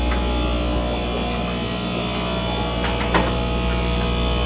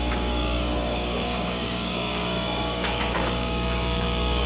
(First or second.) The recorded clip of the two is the first